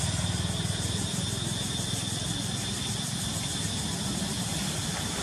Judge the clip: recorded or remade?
recorded